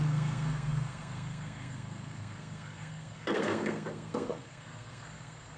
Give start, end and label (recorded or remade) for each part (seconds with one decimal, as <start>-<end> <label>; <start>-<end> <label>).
0.0-5.6 remade